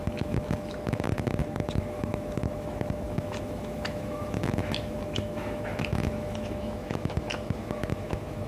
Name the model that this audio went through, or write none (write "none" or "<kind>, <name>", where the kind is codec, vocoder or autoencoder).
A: autoencoder, DAC-VAE